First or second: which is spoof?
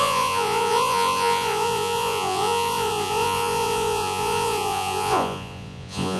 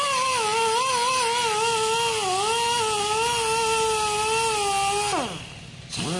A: first